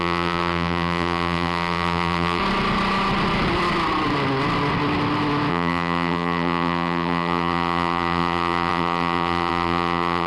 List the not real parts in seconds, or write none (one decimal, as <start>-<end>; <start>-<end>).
0.0-2.4; 5.5-10.3

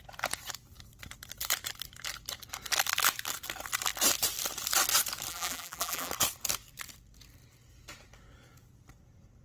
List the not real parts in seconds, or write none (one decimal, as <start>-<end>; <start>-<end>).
5.3-6.1

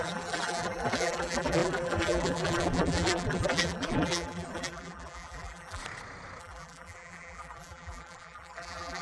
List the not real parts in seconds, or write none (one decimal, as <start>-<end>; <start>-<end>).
0.0-5.8; 6.4-9.0

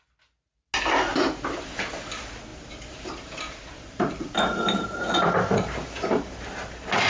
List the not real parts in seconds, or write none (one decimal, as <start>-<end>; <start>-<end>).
1.1-1.6; 2.5-7.1

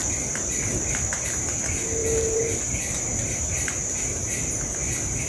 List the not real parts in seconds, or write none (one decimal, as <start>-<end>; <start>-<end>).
0.0-0.5; 2.0-3.8